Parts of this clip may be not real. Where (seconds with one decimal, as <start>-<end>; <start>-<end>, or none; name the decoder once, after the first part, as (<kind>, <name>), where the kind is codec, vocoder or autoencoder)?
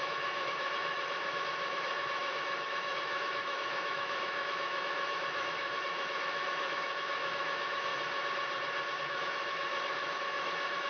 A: 0.0-7.9 (autoencoder, DAC-VAE); 9.0-10.9